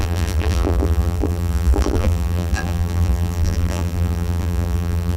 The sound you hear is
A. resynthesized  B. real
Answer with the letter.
A